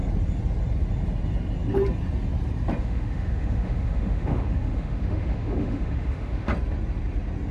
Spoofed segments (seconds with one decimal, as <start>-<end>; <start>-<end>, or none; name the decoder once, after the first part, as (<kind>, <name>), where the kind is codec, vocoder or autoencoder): 2.8-6.5 (autoencoder, DAC-VAE)